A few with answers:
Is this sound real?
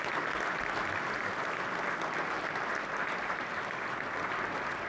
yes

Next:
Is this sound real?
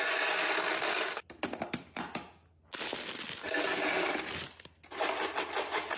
yes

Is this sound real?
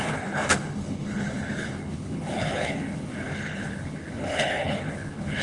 no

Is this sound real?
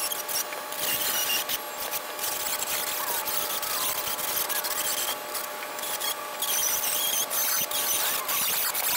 yes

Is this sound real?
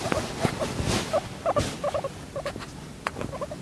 yes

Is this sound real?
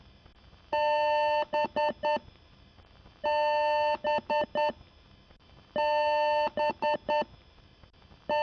yes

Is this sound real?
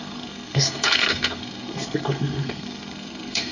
no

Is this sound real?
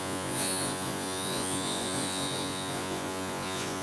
no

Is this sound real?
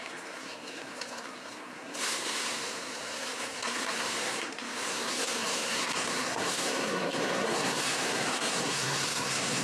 no